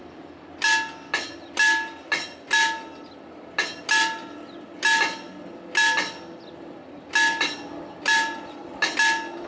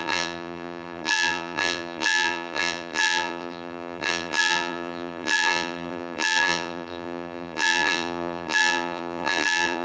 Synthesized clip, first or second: second